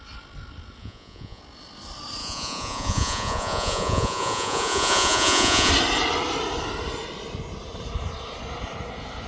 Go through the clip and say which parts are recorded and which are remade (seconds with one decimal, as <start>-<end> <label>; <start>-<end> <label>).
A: 0.0-0.8 recorded; 0.8-1.4 remade; 1.4-2.2 recorded; 2.2-5.7 remade; 5.7-9.3 recorded